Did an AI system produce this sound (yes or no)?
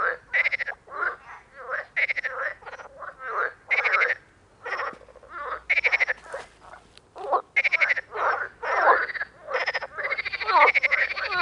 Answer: no